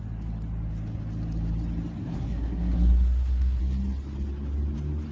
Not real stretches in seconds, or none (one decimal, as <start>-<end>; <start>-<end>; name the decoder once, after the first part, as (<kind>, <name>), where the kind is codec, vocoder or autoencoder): 2.0-3.6 (codec, SNAC)